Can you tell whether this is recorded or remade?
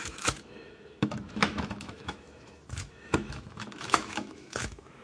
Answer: remade